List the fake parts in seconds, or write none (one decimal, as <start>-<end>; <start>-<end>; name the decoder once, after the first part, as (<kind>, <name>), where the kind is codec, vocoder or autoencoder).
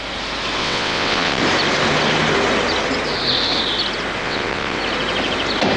0.6-1.4 (vocoder, WaveNeXt); 4.2-4.8